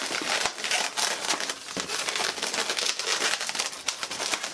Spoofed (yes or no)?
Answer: no